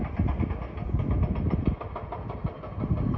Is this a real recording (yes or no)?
yes